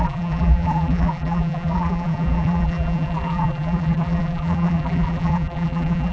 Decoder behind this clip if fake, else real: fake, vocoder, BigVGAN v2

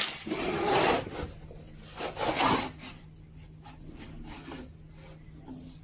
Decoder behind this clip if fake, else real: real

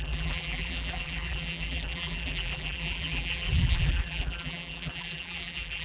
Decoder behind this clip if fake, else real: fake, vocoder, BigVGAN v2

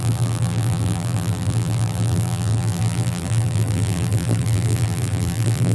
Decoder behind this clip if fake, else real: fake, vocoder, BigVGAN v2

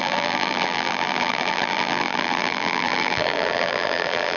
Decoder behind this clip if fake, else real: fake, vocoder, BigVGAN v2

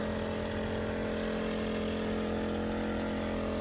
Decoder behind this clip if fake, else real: real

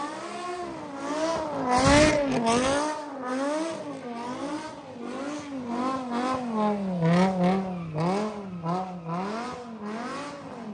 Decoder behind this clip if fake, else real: real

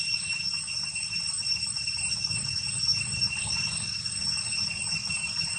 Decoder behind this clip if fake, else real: fake, vocoder, BigVGAN v2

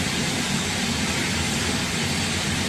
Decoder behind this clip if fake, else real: real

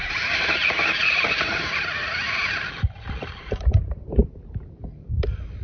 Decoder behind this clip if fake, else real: fake, vocoder, BigVGAN v2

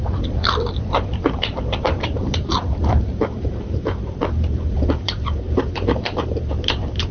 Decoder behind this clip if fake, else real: fake, vocoder, BigVGAN v2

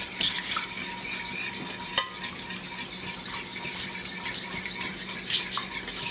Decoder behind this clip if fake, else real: real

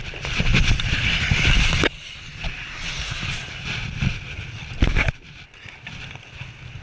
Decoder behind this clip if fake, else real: real